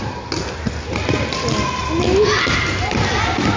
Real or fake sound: real